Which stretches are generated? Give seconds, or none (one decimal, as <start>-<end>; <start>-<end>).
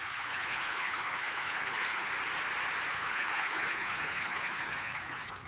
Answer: 0.0-2.1; 2.9-5.5